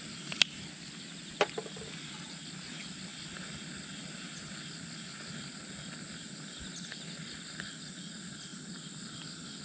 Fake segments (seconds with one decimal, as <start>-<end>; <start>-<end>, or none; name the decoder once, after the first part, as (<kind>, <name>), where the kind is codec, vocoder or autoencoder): 8.5-9.2 (vocoder, BigVGAN v2)